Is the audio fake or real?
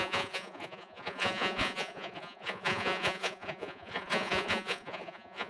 fake